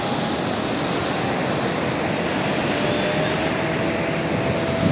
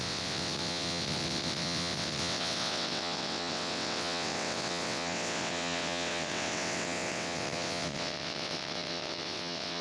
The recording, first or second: first